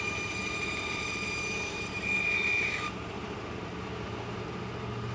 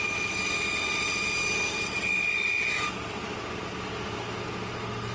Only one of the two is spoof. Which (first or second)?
first